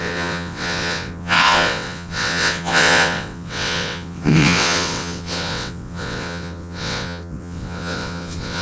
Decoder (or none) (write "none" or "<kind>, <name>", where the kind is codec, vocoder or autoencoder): vocoder, WaveNeXt